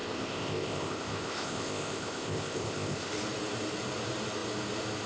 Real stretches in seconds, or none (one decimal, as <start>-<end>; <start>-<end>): 3.1-5.1